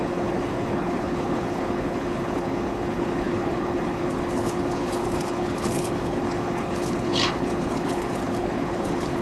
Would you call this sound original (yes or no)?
no